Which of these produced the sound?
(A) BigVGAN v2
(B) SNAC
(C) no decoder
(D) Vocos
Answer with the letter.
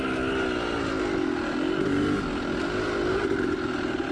C